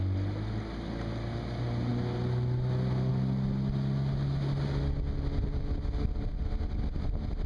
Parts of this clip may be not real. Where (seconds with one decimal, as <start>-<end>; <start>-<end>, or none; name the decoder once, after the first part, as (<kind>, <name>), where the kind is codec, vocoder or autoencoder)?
none

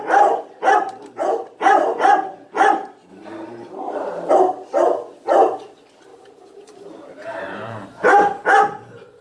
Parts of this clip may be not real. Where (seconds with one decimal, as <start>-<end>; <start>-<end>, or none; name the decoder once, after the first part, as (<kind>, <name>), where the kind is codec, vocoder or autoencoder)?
3.1-4.3 (vocoder, BigVGAN v2); 6.1-9.2

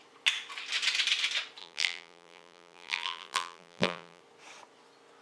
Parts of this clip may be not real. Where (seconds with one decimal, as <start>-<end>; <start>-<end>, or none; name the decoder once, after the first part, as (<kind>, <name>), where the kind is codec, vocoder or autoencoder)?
1.6-4.2 (vocoder, BigVGAN v2)

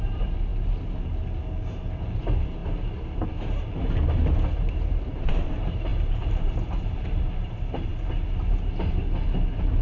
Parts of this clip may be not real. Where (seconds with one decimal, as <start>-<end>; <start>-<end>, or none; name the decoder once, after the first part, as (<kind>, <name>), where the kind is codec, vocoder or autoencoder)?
0.0-0.5 (vocoder, BigVGAN v2); 2.2-2.6; 4.6-7.9